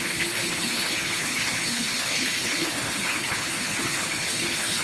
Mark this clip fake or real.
fake